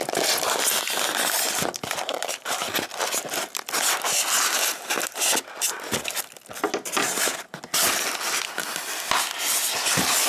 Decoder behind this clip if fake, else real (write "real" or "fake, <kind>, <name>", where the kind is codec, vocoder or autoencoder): real